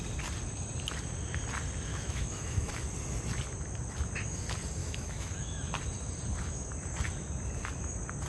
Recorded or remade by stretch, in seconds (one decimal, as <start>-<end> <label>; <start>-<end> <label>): 0.0-1.9 recorded; 1.9-2.7 remade; 2.7-4.8 recorded; 4.8-5.7 remade; 5.7-8.3 recorded